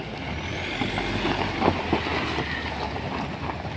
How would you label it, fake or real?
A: real